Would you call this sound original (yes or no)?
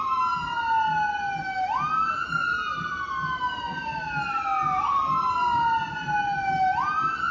yes